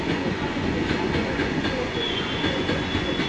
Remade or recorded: remade